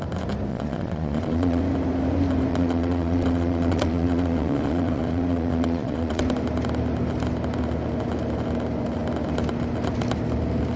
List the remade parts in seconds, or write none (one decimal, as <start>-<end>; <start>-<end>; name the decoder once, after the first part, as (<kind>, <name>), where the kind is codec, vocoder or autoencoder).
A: 0.5-1.6 (vocoder, Vocos); 2.5-6.2